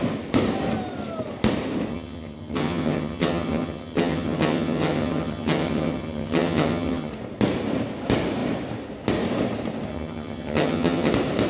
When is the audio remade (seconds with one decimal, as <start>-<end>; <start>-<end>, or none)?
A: 1.9-7.1; 9.9-11.1